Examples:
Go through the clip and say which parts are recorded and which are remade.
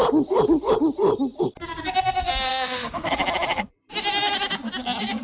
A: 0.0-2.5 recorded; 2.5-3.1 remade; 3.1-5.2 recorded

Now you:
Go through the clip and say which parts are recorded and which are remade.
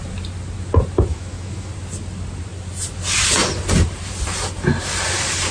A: 0.0-1.1 recorded; 1.1-1.7 remade; 1.7-5.5 recorded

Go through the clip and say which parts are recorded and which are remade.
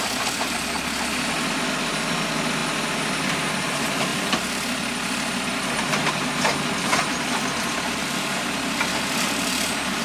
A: 0.0-10.0 recorded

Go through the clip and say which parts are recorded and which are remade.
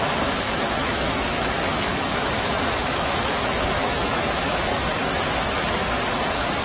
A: 0.0-4.7 remade; 4.7-6.6 recorded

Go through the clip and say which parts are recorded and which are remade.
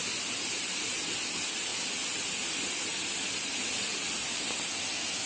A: 0.0-5.3 recorded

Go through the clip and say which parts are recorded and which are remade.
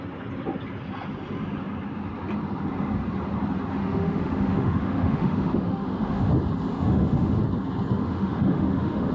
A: 0.0-3.8 recorded; 3.8-6.3 remade; 6.3-6.7 recorded; 6.7-7.4 remade; 7.4-8.0 recorded; 8.0-9.1 remade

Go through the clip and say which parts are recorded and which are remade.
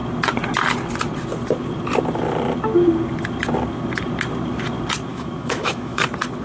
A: 0.0-5.1 recorded; 5.1-6.0 remade; 6.0-6.4 recorded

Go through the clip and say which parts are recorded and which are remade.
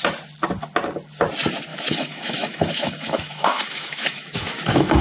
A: 0.0-1.7 recorded; 1.7-5.0 remade